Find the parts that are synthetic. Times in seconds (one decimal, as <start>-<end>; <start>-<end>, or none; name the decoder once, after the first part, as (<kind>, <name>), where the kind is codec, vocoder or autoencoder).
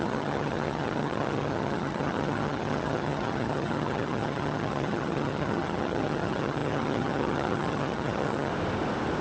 0.0-8.5 (vocoder, HiFi-GAN)